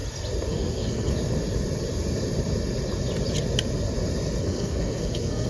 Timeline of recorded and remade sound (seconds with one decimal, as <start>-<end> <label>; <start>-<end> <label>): 0.0-0.5 recorded; 0.5-1.1 remade; 1.1-4.4 recorded; 4.4-5.5 remade